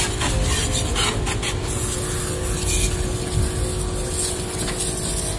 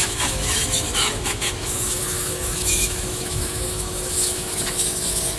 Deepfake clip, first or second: second